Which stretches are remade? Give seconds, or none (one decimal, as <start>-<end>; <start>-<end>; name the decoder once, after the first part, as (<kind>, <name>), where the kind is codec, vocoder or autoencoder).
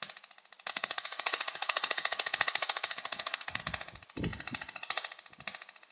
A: 0.7-3.6 (codec, SNAC)